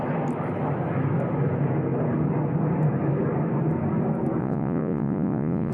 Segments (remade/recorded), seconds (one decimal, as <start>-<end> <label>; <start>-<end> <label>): 0.0-4.4 recorded; 4.4-5.7 remade